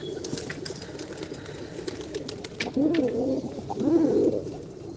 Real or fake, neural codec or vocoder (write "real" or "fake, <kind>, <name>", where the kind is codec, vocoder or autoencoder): real